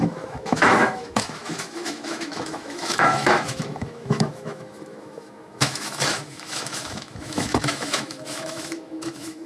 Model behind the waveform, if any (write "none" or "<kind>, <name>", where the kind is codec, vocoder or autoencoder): autoencoder, DAC-VAE